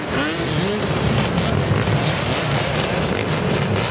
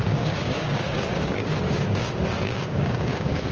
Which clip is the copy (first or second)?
second